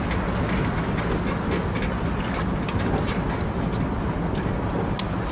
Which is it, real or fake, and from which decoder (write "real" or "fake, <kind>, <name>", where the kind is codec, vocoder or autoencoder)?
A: real